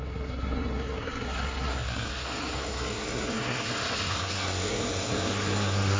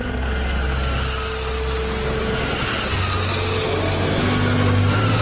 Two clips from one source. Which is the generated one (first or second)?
first